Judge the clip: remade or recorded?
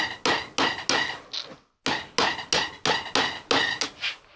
recorded